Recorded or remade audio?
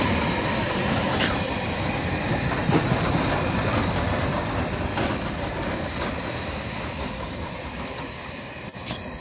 remade